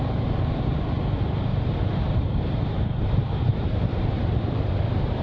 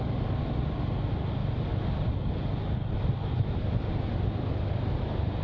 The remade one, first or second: first